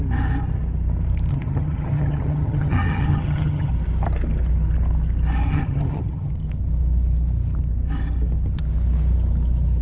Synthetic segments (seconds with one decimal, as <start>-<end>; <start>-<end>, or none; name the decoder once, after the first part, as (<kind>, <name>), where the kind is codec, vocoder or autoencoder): 1.3-3.7 (vocoder, HiFi-GAN); 5.5-6.3